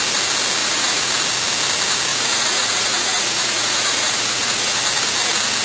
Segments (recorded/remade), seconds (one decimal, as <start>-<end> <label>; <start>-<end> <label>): 0.0-0.6 recorded; 0.6-1.1 remade; 1.1-2.1 recorded; 2.1-4.8 remade; 4.8-5.6 recorded